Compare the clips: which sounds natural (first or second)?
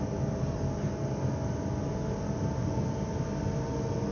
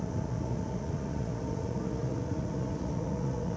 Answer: first